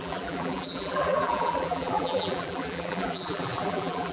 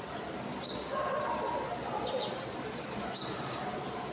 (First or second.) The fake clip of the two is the first